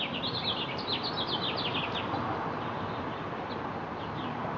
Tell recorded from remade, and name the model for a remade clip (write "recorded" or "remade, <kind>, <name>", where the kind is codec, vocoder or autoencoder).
recorded